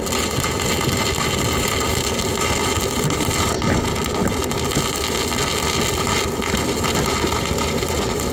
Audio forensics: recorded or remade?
recorded